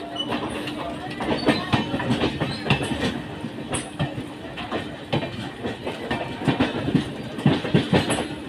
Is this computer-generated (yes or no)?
no